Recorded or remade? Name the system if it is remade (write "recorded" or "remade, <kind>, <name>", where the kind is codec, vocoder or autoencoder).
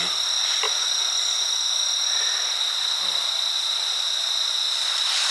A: recorded